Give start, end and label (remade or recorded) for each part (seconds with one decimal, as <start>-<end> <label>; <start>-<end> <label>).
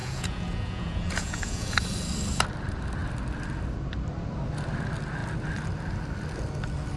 0.0-1.8 remade; 1.8-7.0 recorded